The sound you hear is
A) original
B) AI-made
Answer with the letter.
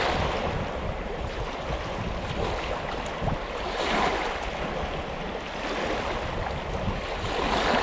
A